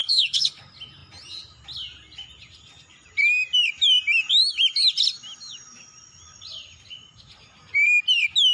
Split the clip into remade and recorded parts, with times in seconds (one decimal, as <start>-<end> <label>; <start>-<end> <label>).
0.0-0.6 remade; 0.6-8.5 recorded